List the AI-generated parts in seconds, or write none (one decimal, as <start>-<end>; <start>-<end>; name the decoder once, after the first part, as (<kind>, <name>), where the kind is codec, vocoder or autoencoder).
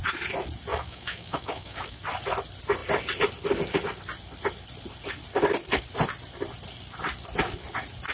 0.7-2.0 (autoencoder, DAC-VAE)